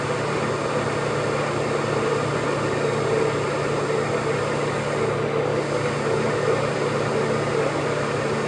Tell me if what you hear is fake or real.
real